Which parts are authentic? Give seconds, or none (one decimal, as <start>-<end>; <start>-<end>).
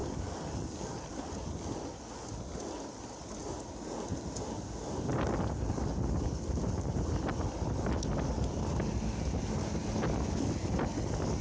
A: 0.0-11.4